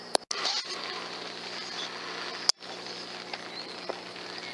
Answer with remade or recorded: recorded